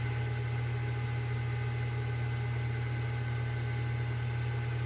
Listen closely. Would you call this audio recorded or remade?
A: recorded